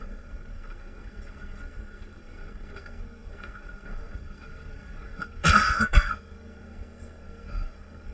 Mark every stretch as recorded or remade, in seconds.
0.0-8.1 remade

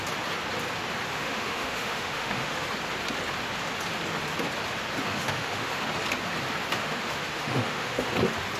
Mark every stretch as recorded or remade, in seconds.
0.0-1.1 recorded; 1.1-2.7 remade; 2.7-5.1 recorded; 5.1-5.8 remade; 5.8-6.8 recorded; 6.8-8.1 remade; 8.1-8.6 recorded